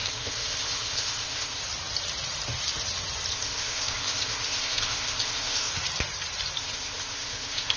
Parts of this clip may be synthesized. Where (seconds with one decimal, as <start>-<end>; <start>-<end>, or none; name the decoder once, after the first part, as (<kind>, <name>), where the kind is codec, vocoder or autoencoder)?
0.0-1.6 (codec, ZipCodec); 3.3-5.7; 6.6-7.8

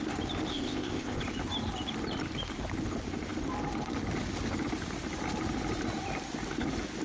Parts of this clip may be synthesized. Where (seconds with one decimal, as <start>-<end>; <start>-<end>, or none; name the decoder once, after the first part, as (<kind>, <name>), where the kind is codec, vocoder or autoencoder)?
0.5-1.2 (codec, ZipCodec)

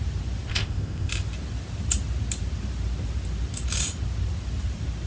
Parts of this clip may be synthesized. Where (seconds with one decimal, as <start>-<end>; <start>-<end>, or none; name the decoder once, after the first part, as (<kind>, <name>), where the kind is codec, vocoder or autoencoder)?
0.5-1.1 (codec, ZipCodec)

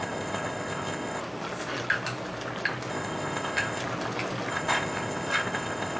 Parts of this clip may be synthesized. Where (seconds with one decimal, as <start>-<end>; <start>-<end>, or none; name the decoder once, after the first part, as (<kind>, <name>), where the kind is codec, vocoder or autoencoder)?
0.0-1.2 (codec, ZipCodec); 2.9-3.8; 4.5-6.0